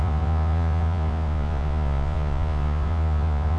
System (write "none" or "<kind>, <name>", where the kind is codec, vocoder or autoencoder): vocoder, Vocos